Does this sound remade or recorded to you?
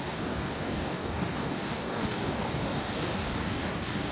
remade